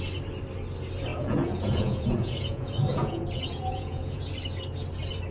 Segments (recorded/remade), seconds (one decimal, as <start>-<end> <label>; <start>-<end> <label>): 0.0-1.1 recorded; 1.1-4.3 remade; 4.3-5.3 recorded